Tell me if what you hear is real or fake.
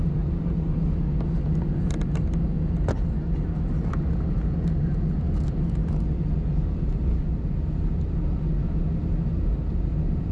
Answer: real